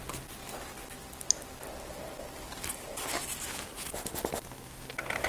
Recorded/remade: recorded